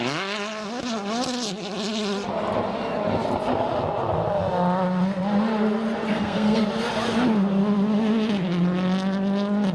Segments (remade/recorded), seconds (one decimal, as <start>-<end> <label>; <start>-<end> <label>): 0.0-6.1 recorded; 6.1-6.6 remade; 6.6-9.7 recorded

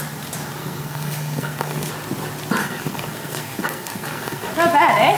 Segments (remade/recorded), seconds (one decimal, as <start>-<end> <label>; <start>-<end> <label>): 0.0-0.6 recorded; 0.6-1.9 remade; 1.9-2.6 recorded; 2.6-4.5 remade; 4.5-5.2 recorded

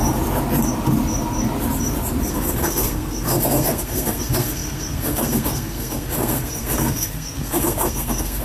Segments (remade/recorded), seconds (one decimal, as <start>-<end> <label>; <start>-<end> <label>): 0.0-2.3 recorded; 2.3-8.4 remade

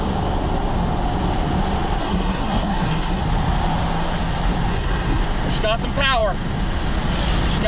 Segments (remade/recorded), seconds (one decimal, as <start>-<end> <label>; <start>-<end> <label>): 0.0-2.0 recorded; 2.0-3.2 remade; 3.2-4.7 recorded; 4.7-5.2 remade; 5.2-7.7 recorded

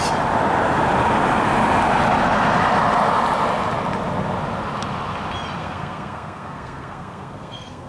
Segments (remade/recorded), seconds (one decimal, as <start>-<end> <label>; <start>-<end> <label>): 0.0-5.6 recorded; 5.6-7.9 remade

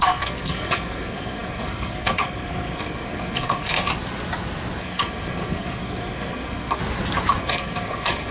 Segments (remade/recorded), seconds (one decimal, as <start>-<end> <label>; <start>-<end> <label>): 0.0-3.9 remade; 3.9-4.8 recorded; 4.8-6.8 remade; 6.8-7.4 recorded; 7.4-8.3 remade